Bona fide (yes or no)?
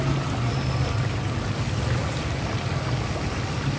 yes